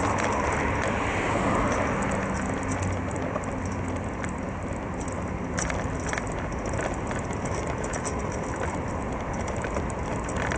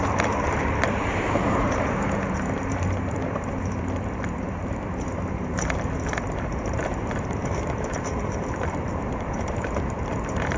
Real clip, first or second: first